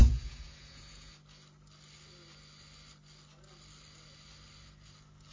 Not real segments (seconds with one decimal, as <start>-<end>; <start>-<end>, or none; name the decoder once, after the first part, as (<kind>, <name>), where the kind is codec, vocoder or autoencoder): 0.0-1.1 (vocoder, Vocos)